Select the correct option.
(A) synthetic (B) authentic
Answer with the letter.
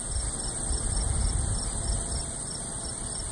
B